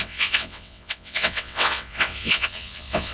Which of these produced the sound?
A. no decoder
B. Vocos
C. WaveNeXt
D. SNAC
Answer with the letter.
C